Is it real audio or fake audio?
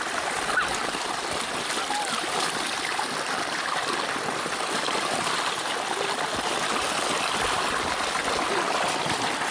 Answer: real